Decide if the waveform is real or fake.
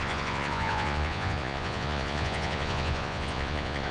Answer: fake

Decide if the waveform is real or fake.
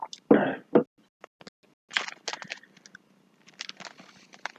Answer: real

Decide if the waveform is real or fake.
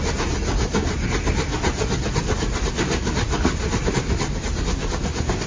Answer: real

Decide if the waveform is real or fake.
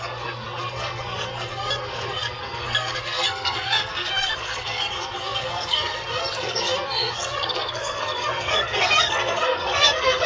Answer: fake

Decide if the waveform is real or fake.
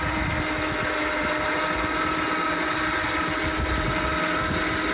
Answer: real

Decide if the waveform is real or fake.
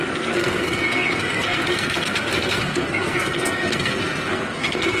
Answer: fake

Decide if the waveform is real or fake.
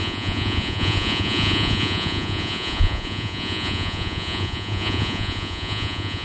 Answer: fake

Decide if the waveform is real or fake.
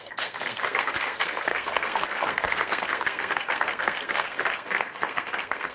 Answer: fake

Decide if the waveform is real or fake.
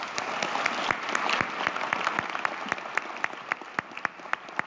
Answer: real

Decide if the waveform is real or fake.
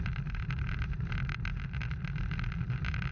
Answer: fake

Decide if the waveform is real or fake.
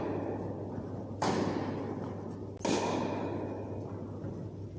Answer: real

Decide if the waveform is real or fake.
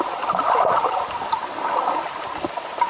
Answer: real